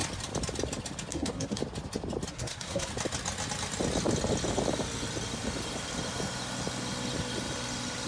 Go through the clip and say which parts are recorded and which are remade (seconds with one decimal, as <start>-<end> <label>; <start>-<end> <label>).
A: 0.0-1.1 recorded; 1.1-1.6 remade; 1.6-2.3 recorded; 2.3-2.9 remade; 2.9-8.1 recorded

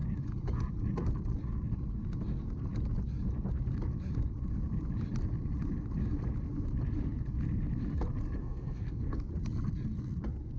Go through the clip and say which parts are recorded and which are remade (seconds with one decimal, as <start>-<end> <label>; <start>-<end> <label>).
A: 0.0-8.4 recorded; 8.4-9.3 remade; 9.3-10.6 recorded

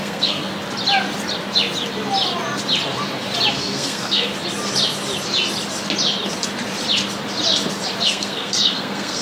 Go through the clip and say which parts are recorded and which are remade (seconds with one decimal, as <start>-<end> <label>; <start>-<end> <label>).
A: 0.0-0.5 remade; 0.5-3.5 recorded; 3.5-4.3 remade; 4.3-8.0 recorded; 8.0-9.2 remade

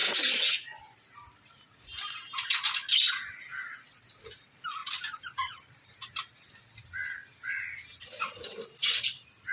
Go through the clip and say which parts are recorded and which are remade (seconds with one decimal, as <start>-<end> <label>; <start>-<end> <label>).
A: 0.0-9.5 recorded

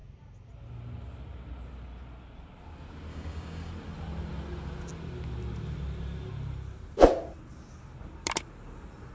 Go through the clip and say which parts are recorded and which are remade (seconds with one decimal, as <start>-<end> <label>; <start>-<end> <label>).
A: 0.0-3.1 recorded; 3.1-3.7 remade; 3.7-9.1 recorded